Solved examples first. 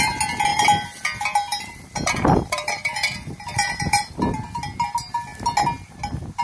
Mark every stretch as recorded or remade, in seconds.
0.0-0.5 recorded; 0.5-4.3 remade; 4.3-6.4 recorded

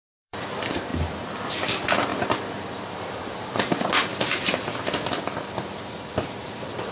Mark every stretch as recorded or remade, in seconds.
0.0-0.9 remade; 0.9-1.6 recorded; 1.6-4.1 remade; 4.1-5.9 recorded; 5.9-6.9 remade